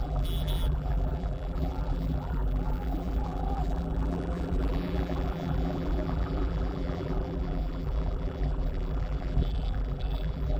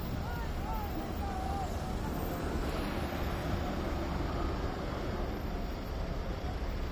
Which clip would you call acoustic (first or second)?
second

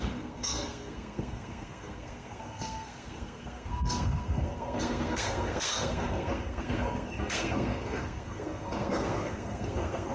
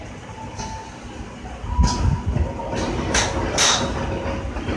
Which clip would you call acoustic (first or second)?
second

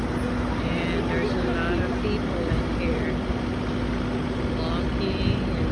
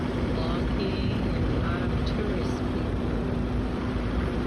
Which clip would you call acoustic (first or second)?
first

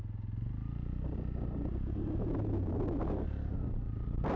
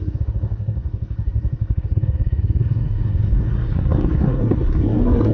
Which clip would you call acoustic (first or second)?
first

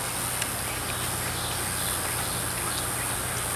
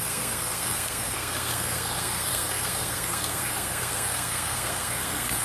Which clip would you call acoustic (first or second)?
first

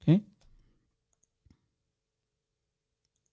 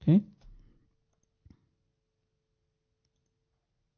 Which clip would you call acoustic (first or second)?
second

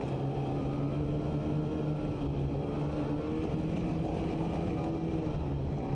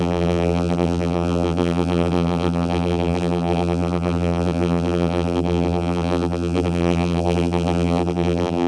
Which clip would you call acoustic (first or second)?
first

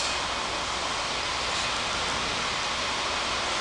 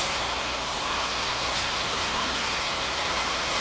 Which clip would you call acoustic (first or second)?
first